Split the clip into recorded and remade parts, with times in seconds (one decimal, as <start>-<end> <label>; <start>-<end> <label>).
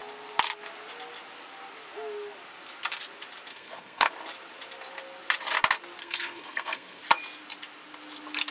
0.0-3.5 recorded; 3.5-4.1 remade; 4.1-6.0 recorded; 6.0-7.0 remade; 7.0-8.5 recorded